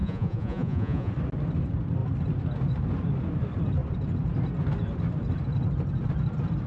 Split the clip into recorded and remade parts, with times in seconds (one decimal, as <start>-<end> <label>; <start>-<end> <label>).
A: 0.0-1.1 remade; 1.1-6.7 recorded